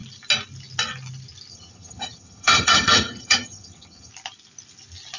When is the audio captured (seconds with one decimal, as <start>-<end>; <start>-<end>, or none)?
0.0-1.5; 4.1-5.2